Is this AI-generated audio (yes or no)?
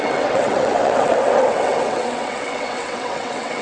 yes